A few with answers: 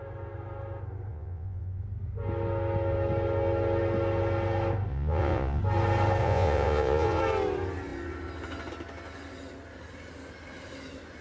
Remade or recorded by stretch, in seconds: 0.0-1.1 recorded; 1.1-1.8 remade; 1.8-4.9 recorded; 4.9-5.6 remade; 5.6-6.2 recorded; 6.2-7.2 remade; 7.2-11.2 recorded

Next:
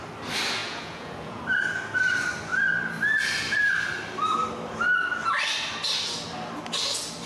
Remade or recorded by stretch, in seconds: 0.0-0.6 recorded; 0.6-1.4 remade; 1.4-7.3 recorded

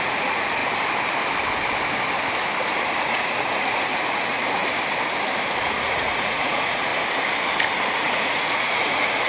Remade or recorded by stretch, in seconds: 0.0-0.6 remade; 0.6-3.1 recorded; 3.1-4.6 remade; 4.6-5.6 recorded; 5.6-6.9 remade; 6.9-7.9 recorded; 7.9-9.3 remade

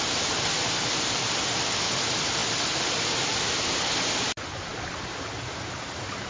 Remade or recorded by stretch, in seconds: 0.0-6.3 recorded

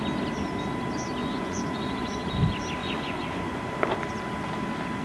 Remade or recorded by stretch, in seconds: 0.0-1.2 recorded; 1.2-2.4 remade; 2.4-2.8 recorded; 2.8-3.7 remade; 3.7-5.0 recorded

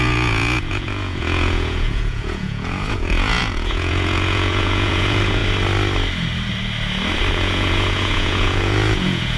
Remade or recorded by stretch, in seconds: 0.0-5.4 remade; 5.4-7.3 recorded; 7.3-9.4 remade